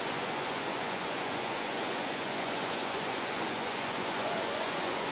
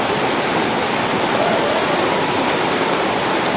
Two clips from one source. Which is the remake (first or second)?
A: first